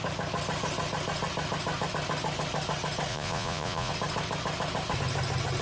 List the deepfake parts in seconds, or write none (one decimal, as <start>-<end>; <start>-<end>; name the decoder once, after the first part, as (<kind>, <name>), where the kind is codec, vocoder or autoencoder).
3.1-3.9 (vocoder, Vocos)